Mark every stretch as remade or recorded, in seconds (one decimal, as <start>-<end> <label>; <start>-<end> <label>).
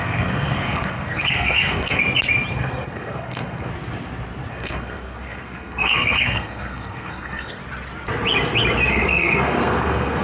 0.0-2.0 remade; 2.0-2.5 recorded; 2.5-3.7 remade; 3.7-4.5 recorded; 4.5-7.6 remade; 7.6-8.9 recorded; 8.9-10.2 remade